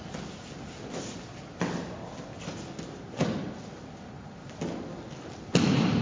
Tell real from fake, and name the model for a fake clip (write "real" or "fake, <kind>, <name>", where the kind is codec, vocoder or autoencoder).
real